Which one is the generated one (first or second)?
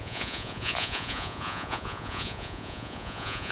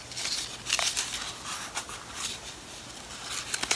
first